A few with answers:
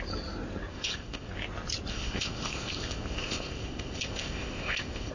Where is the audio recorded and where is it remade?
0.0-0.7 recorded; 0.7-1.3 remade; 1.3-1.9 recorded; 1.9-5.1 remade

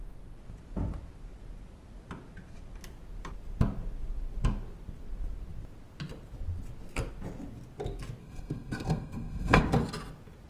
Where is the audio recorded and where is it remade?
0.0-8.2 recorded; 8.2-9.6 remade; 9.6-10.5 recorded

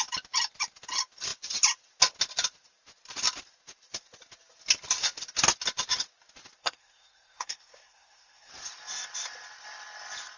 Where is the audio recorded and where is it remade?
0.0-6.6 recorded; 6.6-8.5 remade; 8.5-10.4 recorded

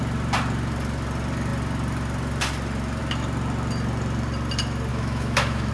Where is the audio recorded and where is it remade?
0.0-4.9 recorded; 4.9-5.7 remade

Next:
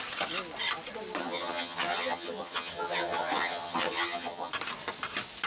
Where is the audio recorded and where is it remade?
0.0-1.2 recorded; 1.2-4.5 remade; 4.5-5.5 recorded